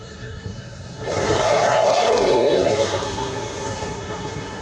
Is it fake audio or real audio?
fake